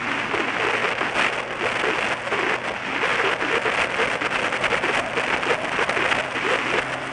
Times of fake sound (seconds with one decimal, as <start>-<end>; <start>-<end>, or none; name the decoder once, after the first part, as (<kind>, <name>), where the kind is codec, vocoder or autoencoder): none